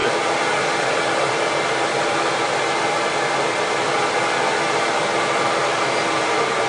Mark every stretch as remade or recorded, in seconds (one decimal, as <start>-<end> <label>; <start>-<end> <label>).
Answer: 0.0-6.7 recorded